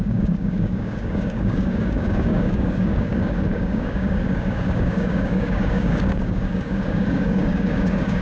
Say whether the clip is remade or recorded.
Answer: remade